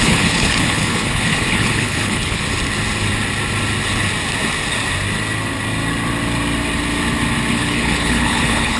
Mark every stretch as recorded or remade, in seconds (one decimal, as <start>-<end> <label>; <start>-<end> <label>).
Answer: 0.0-2.4 remade; 2.4-7.5 recorded; 7.5-8.8 remade